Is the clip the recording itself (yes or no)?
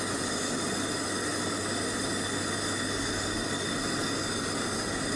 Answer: yes